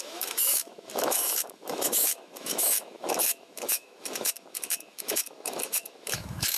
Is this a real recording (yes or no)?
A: no